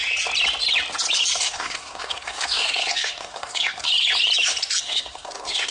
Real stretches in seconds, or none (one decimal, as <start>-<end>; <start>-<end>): 0.0-1.4; 3.9-4.8